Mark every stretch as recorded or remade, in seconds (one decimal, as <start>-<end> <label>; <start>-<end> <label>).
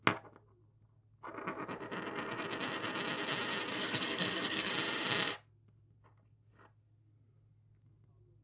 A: 0.0-3.7 recorded; 3.7-4.7 remade; 4.7-8.4 recorded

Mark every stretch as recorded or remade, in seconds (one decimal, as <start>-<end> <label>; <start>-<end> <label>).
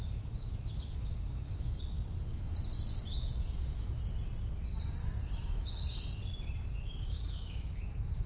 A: 0.0-1.8 remade; 1.8-2.9 recorded; 2.9-4.0 remade; 4.0-5.0 recorded; 5.0-5.7 remade; 5.7-7.0 recorded; 7.0-8.3 remade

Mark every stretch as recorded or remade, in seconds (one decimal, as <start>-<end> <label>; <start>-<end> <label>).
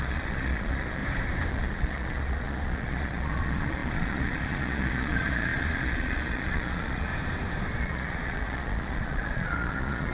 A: 0.0-1.0 remade; 1.0-1.5 recorded; 1.5-7.1 remade; 7.1-7.8 recorded; 7.8-10.1 remade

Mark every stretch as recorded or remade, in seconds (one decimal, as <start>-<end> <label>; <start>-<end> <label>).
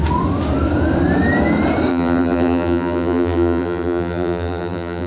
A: 0.0-1.9 recorded; 1.9-5.1 remade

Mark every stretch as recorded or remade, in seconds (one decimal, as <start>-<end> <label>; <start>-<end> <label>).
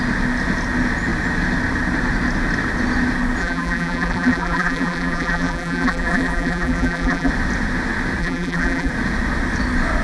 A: 0.0-3.4 recorded; 3.4-7.3 remade; 7.3-8.2 recorded; 8.2-8.9 remade; 8.9-10.0 recorded